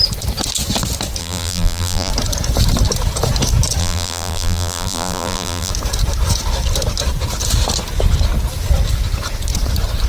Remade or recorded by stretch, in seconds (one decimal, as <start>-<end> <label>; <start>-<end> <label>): 0.0-1.2 recorded; 1.2-2.1 remade; 2.1-3.8 recorded; 3.8-5.7 remade; 5.7-10.1 recorded